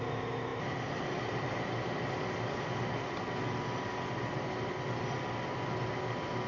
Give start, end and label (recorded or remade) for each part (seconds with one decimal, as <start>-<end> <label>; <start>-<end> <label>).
0.0-6.5 recorded